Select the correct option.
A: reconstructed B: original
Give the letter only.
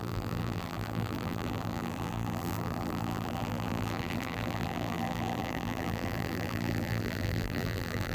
A